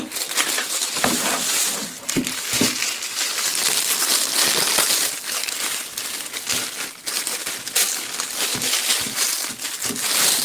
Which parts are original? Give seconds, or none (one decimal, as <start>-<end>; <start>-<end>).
0.0-10.4